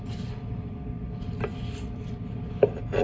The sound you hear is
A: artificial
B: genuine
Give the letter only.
B